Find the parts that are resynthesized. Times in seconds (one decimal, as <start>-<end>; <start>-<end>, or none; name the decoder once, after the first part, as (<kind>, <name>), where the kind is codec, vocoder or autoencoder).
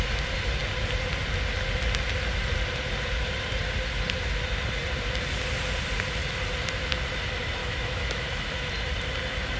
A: 7.6-8.7 (autoencoder, DAC-VAE)